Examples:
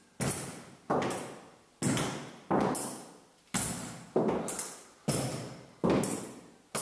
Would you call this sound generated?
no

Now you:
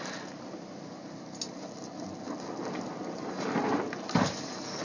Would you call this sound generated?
yes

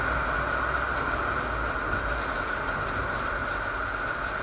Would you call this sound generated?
no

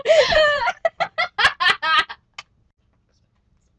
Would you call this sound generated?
no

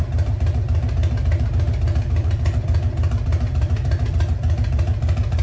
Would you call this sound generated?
yes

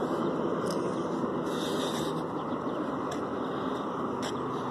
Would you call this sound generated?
no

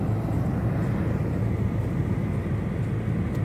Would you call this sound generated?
no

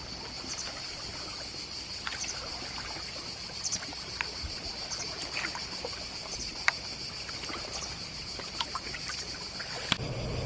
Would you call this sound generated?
no